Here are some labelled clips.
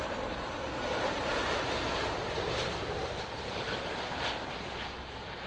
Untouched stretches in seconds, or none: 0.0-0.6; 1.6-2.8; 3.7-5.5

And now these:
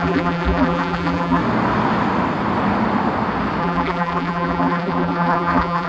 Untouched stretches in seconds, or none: 1.4-3.6

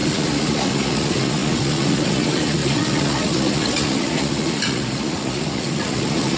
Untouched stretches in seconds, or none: none

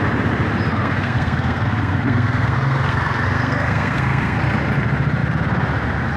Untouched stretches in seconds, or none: 0.0-0.7; 4.4-6.2

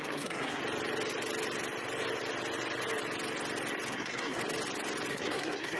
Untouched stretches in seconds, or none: 0.6-3.9; 4.4-5.1

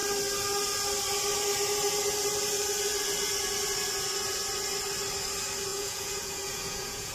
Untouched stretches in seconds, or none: 0.0-5.7